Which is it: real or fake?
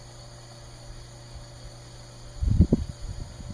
real